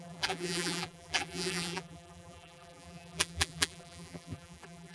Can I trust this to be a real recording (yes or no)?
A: no